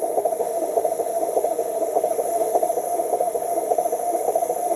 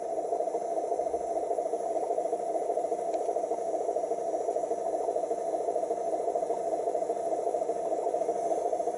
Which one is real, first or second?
second